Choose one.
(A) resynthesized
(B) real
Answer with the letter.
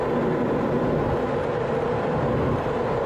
B